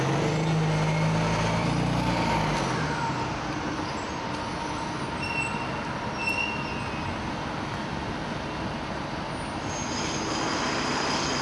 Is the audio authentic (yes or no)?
yes